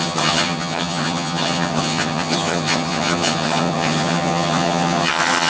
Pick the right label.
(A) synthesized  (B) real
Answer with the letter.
A